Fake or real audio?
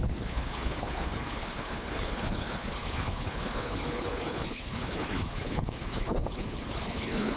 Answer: fake